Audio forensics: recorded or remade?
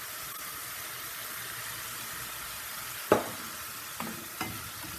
recorded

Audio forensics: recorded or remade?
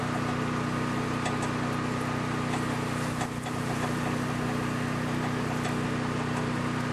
recorded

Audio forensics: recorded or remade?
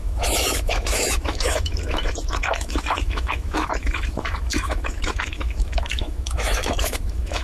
remade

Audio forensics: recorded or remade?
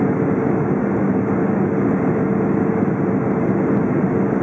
recorded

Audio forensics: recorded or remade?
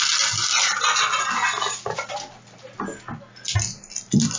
recorded